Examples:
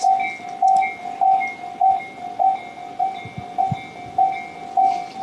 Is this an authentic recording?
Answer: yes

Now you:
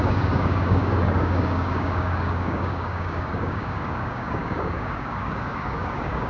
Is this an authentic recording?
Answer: no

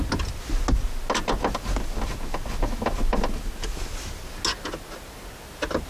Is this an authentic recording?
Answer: yes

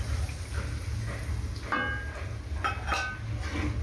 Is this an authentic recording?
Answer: yes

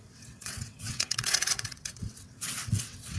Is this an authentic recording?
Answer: no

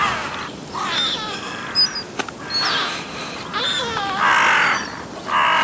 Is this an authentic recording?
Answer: yes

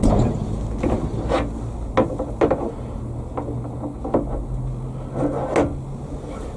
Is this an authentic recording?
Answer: yes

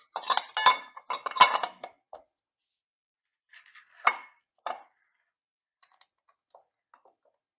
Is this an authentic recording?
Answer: yes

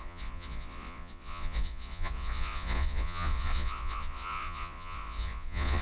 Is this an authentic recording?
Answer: no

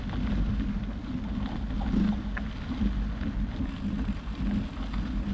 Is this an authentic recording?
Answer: yes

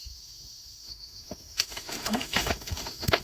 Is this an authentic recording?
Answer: no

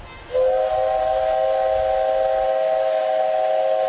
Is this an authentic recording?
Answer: yes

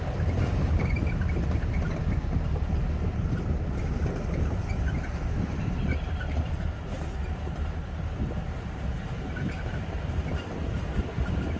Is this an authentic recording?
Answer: yes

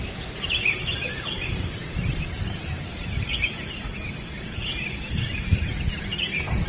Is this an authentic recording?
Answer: no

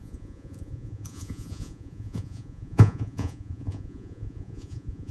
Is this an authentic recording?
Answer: no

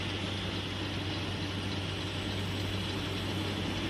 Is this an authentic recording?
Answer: yes